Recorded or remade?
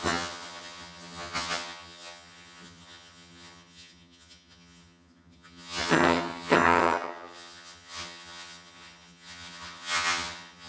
remade